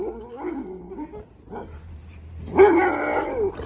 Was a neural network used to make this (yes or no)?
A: no